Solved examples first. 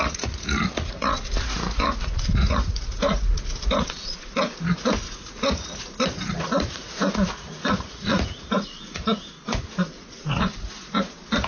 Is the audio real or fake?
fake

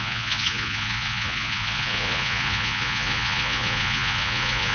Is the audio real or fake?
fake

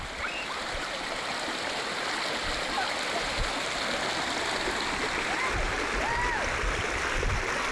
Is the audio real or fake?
real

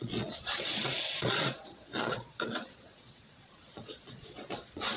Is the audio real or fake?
fake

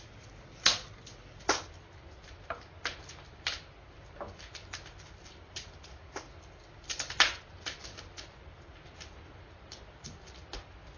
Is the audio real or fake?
real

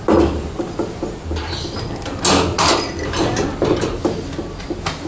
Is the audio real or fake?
real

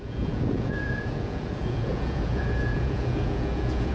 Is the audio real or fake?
fake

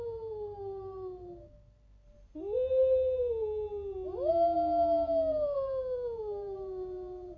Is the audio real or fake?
real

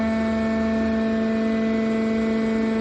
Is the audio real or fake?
real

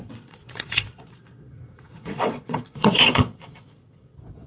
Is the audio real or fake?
fake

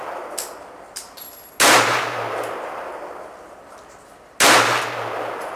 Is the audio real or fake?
real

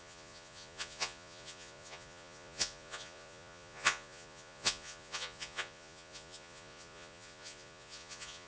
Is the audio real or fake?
fake